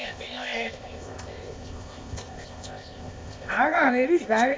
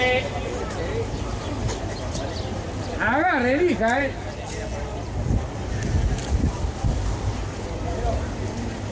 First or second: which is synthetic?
first